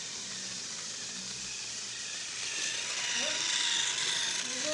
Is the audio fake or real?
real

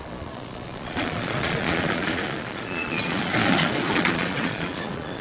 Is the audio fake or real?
fake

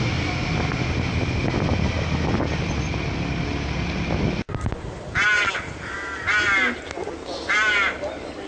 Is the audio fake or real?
real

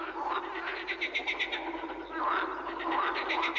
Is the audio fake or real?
real